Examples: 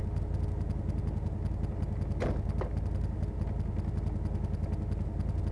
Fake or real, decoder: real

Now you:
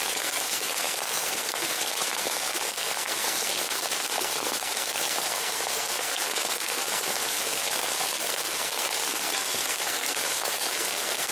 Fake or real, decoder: fake, codec, SNAC